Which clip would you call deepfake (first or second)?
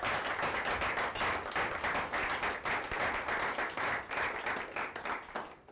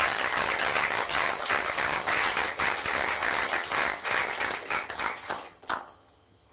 second